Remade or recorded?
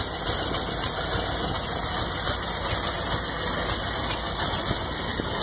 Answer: recorded